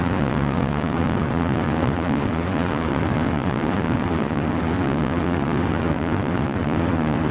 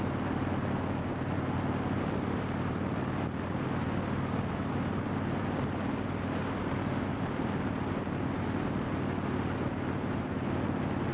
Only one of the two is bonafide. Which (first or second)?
second